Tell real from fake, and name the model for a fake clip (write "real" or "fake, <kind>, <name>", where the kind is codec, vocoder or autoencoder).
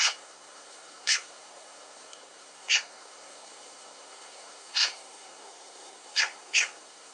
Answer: fake, codec, SNAC